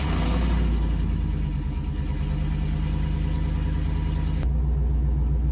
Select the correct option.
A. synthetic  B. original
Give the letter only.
B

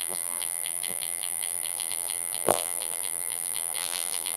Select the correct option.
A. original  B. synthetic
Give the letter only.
B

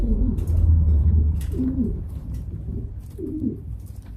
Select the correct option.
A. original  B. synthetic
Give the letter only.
B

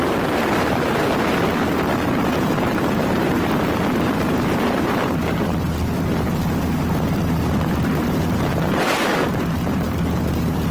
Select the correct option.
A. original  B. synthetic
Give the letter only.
B